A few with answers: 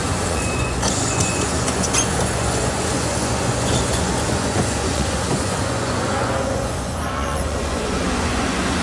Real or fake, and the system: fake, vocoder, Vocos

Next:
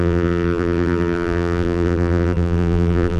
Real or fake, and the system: fake, vocoder, BigVGAN v2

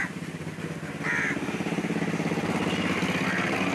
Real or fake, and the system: real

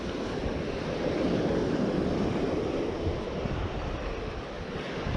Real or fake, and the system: real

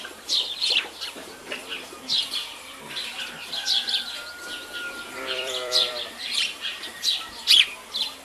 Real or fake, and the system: fake, vocoder, BigVGAN v2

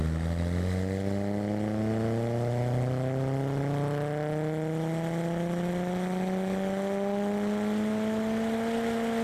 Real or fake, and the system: real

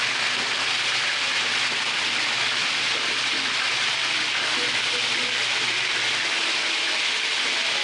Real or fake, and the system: real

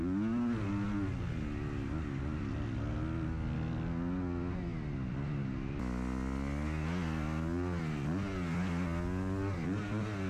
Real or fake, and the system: real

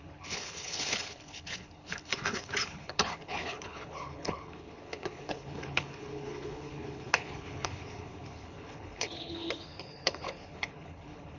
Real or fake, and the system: fake, codec, HILCodec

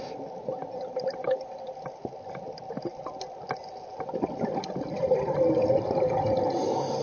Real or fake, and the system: real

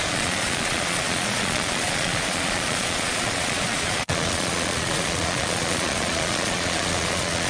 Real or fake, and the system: fake, vocoder, Vocos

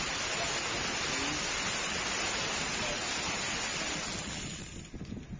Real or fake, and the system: real